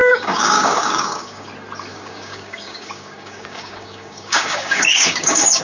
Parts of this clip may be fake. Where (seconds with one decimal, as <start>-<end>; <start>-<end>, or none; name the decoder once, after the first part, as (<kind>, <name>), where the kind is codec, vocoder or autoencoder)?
0.0-1.5 (codec, DAC); 1.9-5.6